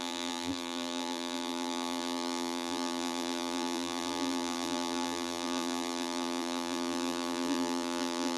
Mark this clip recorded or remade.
remade